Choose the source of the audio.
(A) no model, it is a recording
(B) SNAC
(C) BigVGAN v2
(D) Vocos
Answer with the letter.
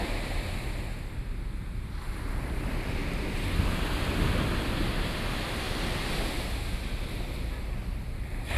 A